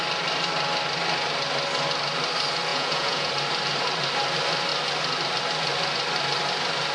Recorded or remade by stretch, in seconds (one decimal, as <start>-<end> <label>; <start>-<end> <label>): 0.0-2.7 recorded; 2.7-3.3 remade; 3.3-6.9 recorded